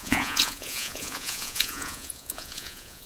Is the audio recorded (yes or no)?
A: no